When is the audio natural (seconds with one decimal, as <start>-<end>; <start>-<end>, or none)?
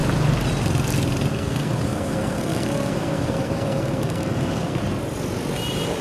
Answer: 0.0-1.3; 4.8-6.0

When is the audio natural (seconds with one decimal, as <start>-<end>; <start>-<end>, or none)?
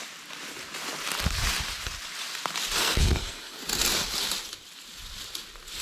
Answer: 0.0-2.8; 3.6-5.8